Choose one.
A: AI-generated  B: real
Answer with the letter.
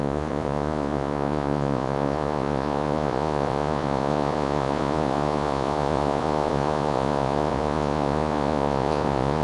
A